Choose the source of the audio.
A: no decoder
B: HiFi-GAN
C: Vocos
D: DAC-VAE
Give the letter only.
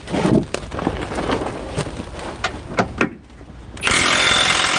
A